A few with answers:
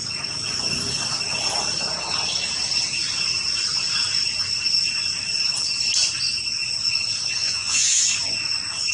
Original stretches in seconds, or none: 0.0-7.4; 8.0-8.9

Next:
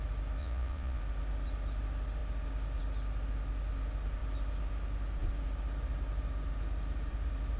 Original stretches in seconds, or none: 0.0-0.4; 1.0-7.6